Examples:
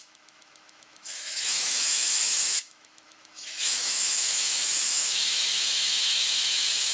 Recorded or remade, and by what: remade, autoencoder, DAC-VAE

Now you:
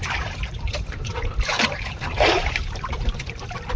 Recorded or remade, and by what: remade, vocoder, BigVGAN v2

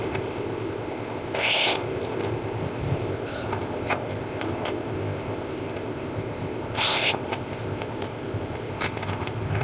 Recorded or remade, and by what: remade, codec, ZipCodec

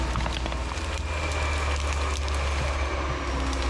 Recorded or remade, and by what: recorded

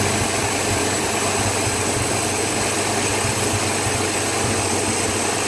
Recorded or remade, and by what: recorded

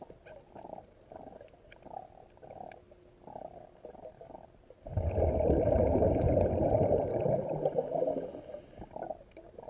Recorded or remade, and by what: recorded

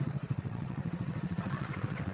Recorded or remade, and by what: remade, vocoder, WaveNeXt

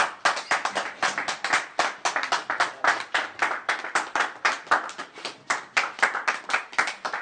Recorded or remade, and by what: recorded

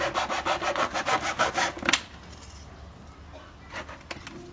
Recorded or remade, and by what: recorded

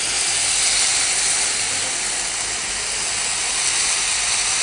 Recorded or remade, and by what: recorded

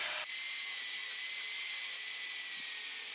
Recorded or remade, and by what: recorded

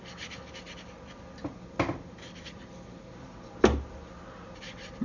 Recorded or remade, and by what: recorded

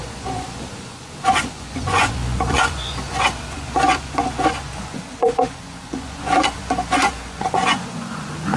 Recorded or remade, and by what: remade, vocoder, Vocos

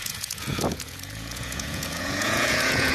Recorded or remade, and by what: remade, vocoder, Vocos